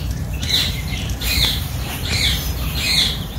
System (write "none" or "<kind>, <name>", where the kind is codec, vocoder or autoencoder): vocoder, BigVGAN v2